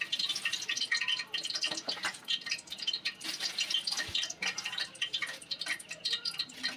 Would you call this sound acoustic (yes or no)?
yes